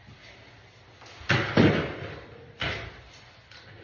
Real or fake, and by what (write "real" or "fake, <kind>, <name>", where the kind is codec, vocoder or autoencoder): real